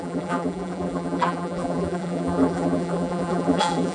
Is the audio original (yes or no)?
no